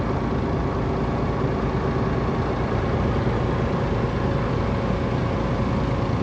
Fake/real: real